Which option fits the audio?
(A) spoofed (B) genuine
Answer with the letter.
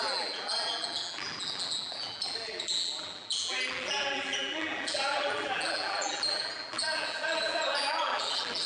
A